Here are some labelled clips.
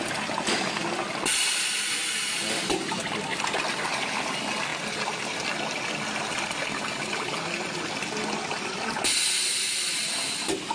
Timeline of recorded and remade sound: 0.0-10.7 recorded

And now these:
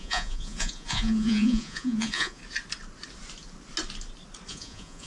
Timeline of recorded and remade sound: 0.0-2.4 remade; 2.4-4.5 recorded; 4.5-5.1 remade